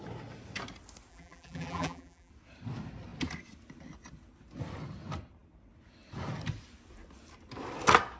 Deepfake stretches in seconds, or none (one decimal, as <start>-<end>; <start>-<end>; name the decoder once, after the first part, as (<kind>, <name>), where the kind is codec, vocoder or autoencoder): 1.1-2.3 (vocoder, BigVGAN v2)